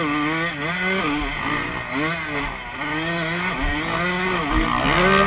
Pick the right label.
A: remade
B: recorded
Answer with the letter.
B